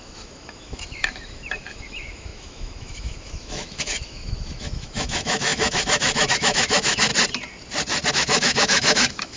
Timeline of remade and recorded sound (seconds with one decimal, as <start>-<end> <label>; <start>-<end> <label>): 0.0-7.1 remade; 7.1-8.1 recorded; 8.1-9.4 remade